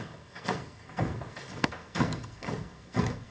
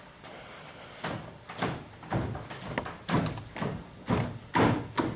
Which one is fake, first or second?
first